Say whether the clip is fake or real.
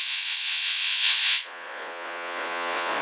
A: fake